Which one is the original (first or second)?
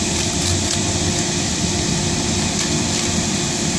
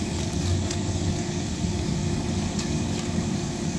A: first